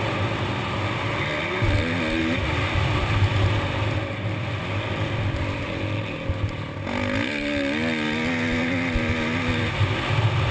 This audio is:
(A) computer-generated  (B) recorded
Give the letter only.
B